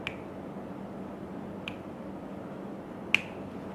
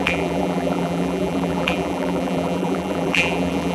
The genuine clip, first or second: first